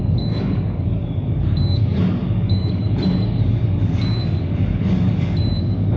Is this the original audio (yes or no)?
no